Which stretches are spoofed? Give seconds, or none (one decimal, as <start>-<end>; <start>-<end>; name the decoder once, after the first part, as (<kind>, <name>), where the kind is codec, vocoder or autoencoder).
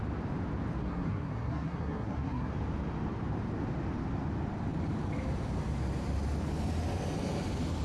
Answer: 0.8-2.5 (codec, SNAC)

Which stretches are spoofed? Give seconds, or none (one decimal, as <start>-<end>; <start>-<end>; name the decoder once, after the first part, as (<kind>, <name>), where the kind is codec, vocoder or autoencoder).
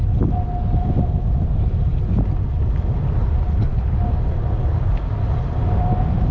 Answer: none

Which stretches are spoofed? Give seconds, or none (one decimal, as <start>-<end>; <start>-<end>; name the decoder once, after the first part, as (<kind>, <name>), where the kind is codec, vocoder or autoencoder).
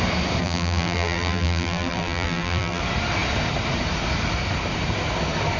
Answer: 0.4-2.8 (vocoder, BigVGAN v2)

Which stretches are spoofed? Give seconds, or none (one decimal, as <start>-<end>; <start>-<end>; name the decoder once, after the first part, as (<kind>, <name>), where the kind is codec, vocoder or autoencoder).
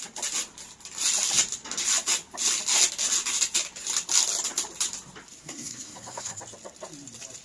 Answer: 5.4-6.4 (codec, SNAC)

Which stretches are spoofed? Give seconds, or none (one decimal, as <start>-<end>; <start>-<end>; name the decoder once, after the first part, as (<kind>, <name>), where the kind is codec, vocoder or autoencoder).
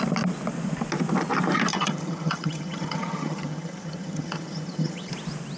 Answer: 1.7-5.1 (vocoder, HiFi-GAN)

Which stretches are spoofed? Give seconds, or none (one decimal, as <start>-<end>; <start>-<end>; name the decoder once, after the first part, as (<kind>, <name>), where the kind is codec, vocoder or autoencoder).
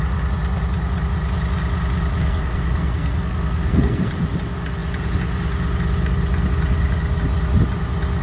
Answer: 2.2-4.1 (codec, SNAC)